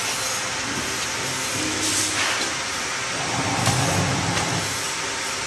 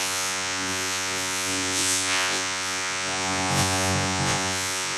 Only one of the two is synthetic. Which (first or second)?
second